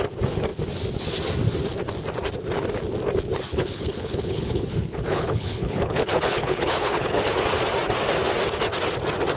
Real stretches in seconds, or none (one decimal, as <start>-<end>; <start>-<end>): 0.0-3.5; 7.3-9.4